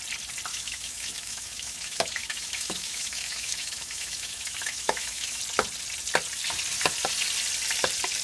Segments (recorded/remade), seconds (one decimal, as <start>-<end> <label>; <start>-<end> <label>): 0.0-0.5 recorded; 0.5-5.4 remade; 5.4-8.2 recorded